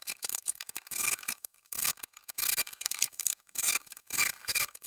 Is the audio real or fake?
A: fake